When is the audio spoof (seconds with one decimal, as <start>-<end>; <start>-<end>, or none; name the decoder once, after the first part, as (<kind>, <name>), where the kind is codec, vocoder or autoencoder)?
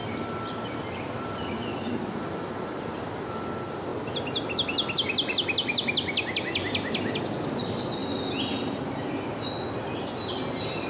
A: 0.0-2.5 (vocoder, BigVGAN v2)